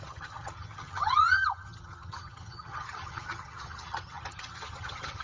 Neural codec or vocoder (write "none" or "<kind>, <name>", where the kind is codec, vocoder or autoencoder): vocoder, HiFi-GAN